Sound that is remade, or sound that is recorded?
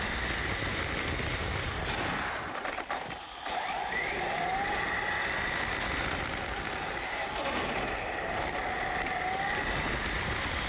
recorded